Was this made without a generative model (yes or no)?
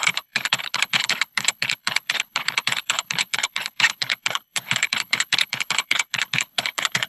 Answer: no